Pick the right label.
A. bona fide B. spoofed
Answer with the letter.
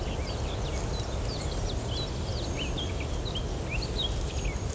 A